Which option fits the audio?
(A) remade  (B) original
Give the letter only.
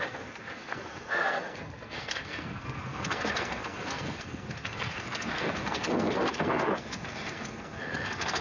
A